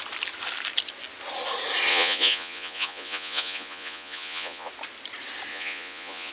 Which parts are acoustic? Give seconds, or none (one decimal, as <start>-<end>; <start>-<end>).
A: 0.0-1.9; 4.7-5.5